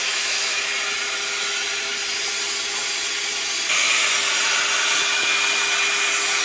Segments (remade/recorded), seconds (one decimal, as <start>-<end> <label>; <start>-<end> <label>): 0.0-0.7 remade; 0.7-6.4 recorded